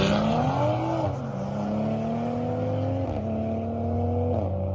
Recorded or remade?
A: recorded